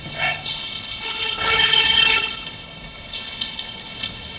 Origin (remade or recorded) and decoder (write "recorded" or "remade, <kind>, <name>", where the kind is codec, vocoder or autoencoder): remade, codec, HILCodec